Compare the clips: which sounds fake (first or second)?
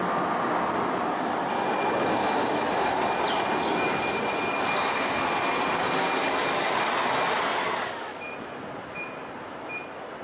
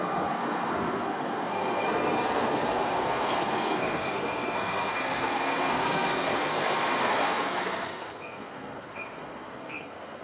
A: second